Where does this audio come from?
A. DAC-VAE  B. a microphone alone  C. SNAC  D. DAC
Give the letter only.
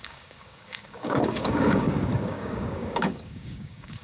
D